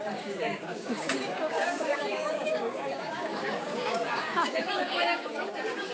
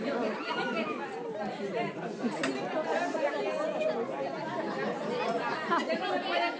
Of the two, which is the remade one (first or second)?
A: first